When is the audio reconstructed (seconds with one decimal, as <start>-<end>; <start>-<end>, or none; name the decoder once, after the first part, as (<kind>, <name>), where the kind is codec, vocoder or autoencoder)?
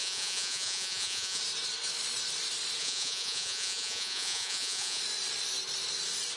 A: 0.0-1.4 (vocoder, Vocos); 2.8-5.0